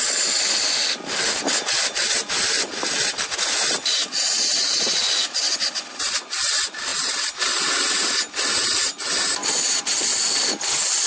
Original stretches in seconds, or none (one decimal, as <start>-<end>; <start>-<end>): 0.0-4.1; 5.4-11.1